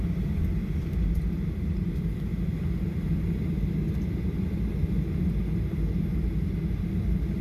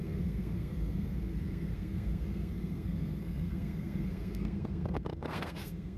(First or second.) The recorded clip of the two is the first